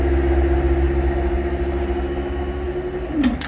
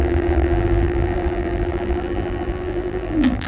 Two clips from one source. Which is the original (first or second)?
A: first